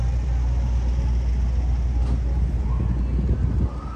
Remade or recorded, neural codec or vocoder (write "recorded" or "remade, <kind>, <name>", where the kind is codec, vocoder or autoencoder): recorded